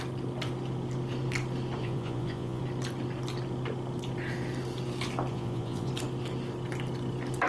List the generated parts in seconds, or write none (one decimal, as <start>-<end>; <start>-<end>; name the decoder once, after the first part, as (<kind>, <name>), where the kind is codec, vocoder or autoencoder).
1.8-2.6 (vocoder, Vocos); 5.3-5.9